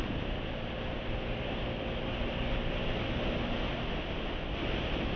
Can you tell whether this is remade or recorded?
recorded